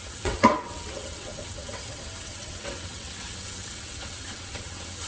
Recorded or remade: remade